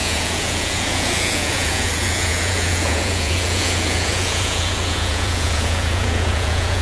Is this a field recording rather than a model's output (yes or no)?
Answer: no